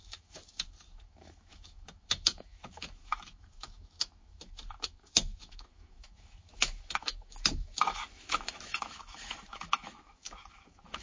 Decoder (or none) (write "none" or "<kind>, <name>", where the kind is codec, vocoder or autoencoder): autoencoder, DAC-VAE